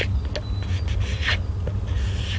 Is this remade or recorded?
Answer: recorded